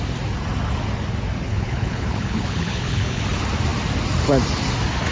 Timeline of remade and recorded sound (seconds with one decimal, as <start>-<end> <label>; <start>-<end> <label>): 0.0-1.5 recorded; 1.5-3.2 remade; 3.2-5.1 recorded